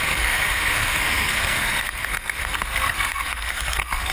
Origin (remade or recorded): remade